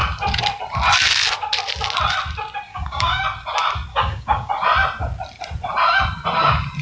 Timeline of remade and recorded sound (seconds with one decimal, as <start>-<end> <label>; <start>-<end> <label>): 0.0-2.7 recorded; 2.7-3.2 remade; 3.2-3.9 recorded; 3.9-4.5 remade; 4.5-6.8 recorded